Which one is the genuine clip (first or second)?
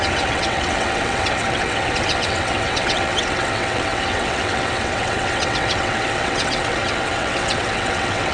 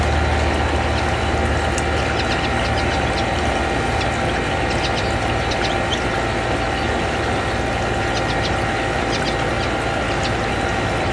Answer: second